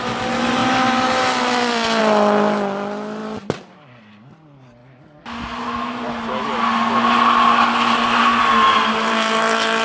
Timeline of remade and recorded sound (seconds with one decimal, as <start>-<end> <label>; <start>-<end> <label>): 0.0-3.2 recorded; 3.2-4.1 remade; 4.1-9.8 recorded